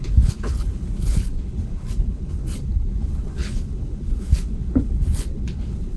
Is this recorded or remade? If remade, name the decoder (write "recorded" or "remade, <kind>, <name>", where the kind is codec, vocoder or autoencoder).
remade, codec, HILCodec